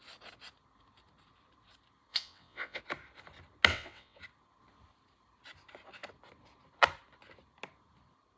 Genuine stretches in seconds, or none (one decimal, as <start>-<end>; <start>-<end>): 0.0-2.1; 2.8-3.7; 4.2-8.4